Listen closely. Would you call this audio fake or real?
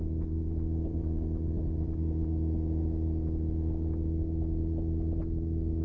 real